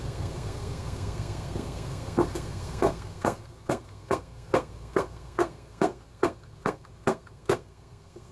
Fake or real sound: fake